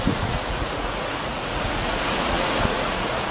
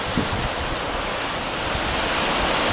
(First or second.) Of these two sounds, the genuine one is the second